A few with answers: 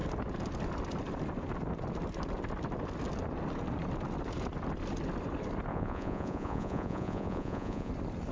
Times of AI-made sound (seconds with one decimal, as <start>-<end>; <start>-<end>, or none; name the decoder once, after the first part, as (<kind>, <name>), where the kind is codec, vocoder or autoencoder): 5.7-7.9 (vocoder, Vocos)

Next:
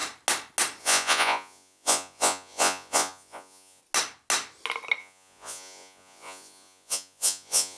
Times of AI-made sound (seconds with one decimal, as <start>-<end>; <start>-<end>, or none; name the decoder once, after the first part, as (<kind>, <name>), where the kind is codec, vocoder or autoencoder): 0.8-3.8 (vocoder, Vocos); 5.0-7.8

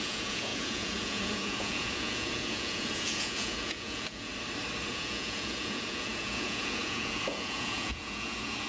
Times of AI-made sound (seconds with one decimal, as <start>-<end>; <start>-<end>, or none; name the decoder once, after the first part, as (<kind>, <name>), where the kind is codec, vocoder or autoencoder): 0.0-4.3 (vocoder, Vocos); 4.9-8.7

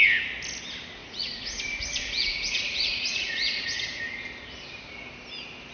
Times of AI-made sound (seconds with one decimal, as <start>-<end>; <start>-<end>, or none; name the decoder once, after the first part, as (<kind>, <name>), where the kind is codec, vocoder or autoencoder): 1.0-4.0 (vocoder, Vocos)

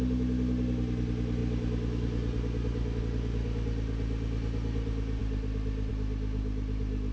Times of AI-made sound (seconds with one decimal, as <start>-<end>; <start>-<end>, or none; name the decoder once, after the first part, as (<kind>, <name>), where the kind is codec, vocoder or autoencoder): none

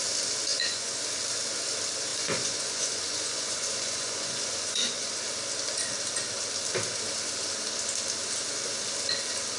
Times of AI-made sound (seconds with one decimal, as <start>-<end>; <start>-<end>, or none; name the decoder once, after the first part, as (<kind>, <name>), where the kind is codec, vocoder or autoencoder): 0.5-1.0 (vocoder, Vocos); 2.1-5.2